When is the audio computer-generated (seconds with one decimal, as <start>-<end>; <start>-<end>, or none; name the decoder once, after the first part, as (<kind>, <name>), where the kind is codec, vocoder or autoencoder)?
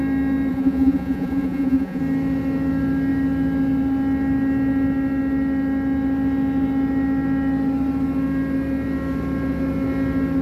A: 0.5-2.0 (vocoder, Vocos)